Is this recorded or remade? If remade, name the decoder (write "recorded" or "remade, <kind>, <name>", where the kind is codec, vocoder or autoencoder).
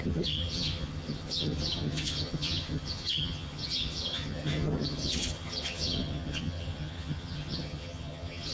remade, vocoder, HiFi-GAN